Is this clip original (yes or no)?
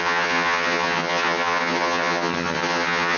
no